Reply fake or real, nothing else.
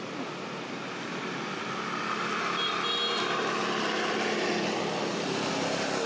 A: real